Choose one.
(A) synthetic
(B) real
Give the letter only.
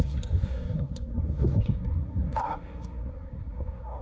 A